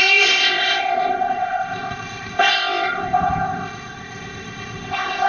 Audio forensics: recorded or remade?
remade